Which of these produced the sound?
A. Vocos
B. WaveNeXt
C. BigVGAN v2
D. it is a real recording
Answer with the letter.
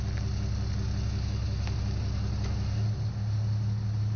D